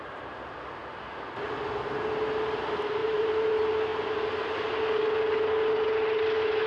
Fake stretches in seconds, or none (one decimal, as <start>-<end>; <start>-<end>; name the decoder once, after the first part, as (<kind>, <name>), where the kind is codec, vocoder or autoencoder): 3.0-3.5 (vocoder, BigVGAN v2)